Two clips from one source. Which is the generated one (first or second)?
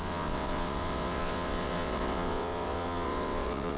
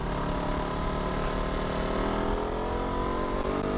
first